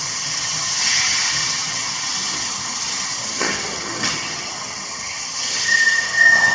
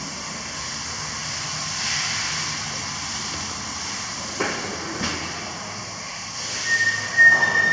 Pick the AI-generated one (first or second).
first